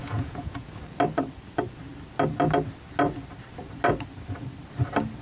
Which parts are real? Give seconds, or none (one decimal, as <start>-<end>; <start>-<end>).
0.7-5.2